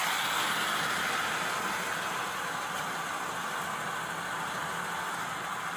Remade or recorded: recorded